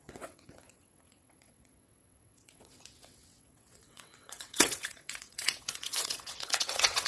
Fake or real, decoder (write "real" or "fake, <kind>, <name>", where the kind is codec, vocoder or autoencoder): fake, vocoder, WaveNeXt